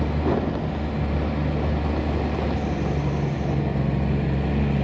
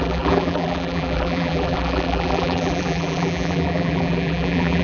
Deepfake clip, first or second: second